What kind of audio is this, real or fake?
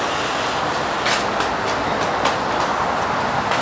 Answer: real